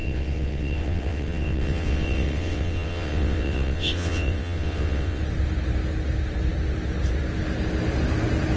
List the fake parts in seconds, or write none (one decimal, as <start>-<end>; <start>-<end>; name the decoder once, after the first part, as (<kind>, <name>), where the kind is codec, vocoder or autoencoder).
0.0-5.2 (vocoder, WaveNeXt)